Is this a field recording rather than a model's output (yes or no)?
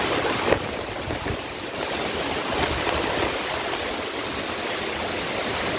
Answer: yes